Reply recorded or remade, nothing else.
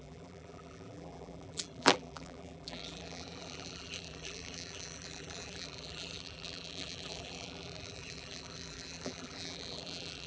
remade